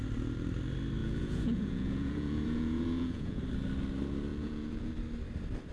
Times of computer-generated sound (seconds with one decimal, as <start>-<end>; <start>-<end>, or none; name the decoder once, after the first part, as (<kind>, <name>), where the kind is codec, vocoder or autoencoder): 1.0-3.4 (vocoder, Vocos); 4.3-4.9

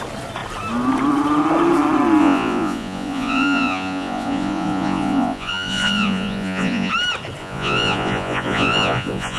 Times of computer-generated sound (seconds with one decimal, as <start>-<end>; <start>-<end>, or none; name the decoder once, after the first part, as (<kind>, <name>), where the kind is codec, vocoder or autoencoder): 2.2-6.9 (vocoder, Vocos); 7.4-9.4

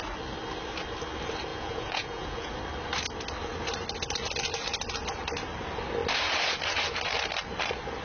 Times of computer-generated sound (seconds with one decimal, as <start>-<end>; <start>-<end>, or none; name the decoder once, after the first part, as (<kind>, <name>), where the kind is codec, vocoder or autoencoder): 1.5-2.5 (vocoder, Vocos)

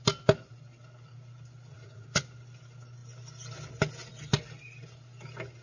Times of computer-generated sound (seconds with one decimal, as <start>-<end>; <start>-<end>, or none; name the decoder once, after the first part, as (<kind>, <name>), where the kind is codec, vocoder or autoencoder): 1.7-2.2 (vocoder, Vocos)

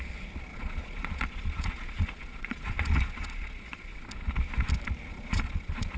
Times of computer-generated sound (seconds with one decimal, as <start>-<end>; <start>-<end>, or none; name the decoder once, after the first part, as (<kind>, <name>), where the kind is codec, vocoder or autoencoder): 0.5-4.1 (vocoder, Vocos); 5.1-6.0

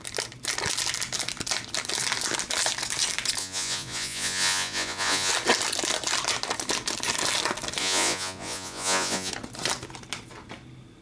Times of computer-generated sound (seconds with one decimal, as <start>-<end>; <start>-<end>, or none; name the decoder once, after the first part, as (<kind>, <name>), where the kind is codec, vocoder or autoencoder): 3.4-5.3 (vocoder, Vocos); 7.8-9.3

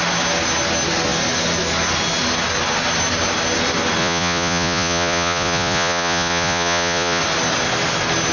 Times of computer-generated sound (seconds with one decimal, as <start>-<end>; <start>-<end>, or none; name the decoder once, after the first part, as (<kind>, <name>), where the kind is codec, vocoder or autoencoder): 4.0-7.2 (vocoder, Vocos)

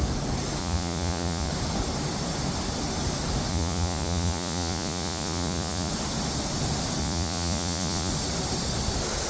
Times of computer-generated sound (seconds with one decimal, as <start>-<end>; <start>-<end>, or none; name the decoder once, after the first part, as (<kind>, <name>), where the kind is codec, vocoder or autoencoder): 0.6-1.5 (vocoder, Vocos); 3.5-5.9; 7.0-8.1